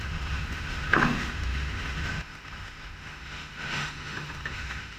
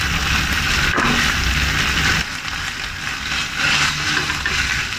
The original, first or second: second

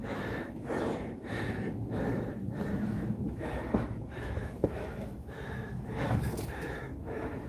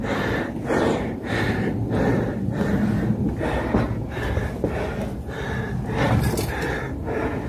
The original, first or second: second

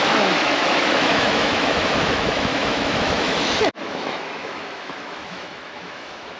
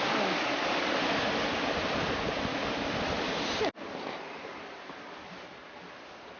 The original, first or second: second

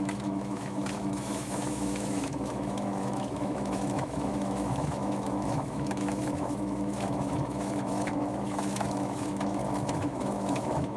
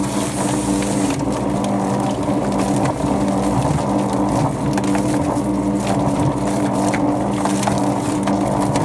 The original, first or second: second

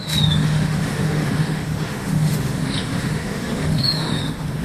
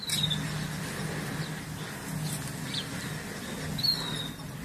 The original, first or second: second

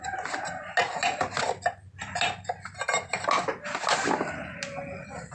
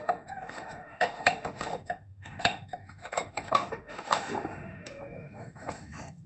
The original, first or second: first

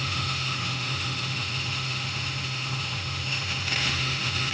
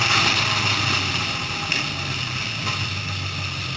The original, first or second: second